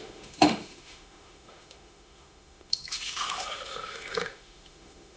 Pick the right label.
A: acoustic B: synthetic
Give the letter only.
B